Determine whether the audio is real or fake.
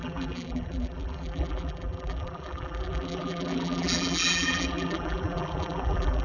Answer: fake